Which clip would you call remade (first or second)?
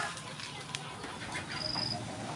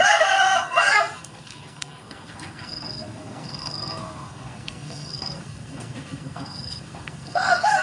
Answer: second